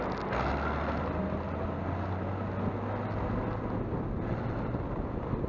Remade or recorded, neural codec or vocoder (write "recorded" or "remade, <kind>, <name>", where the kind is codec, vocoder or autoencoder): recorded